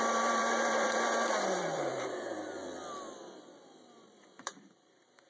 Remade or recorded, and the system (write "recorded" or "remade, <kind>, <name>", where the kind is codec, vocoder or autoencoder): remade, vocoder, BigVGAN v2